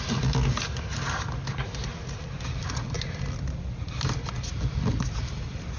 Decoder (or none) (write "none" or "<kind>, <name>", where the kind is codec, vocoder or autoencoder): none